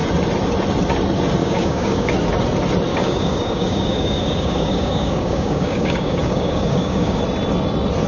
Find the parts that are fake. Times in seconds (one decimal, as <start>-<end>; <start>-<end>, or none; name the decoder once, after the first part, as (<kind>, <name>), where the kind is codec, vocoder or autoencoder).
1.4-2.1 (codec, DAC); 2.9-7.2